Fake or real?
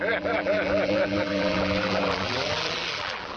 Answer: fake